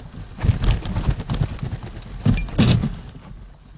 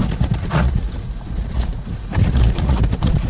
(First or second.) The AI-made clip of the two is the second